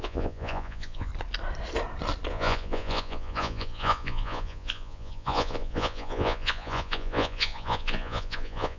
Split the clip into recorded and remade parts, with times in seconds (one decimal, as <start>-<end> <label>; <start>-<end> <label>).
0.0-1.1 remade; 1.1-2.3 recorded; 2.3-8.8 remade